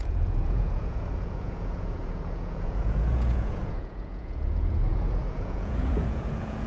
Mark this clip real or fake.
fake